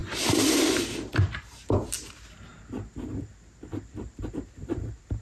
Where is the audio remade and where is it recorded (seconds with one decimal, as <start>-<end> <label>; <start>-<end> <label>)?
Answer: 0.0-1.9 remade; 1.9-3.7 recorded; 3.7-5.2 remade